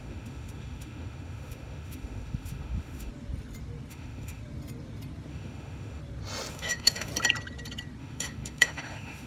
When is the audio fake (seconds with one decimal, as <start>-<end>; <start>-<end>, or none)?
0.0-3.1; 3.9-4.4; 5.3-6.0; 6.5-7.1; 8.0-9.3